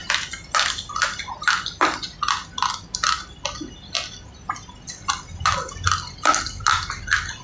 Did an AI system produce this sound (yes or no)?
no